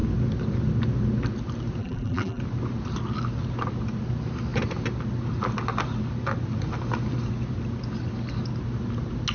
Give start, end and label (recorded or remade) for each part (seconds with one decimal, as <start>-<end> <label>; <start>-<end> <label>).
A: 0.0-1.8 recorded; 1.8-2.4 remade; 2.4-9.3 recorded